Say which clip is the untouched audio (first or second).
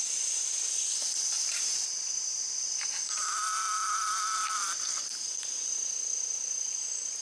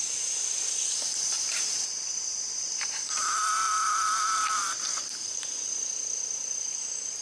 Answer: first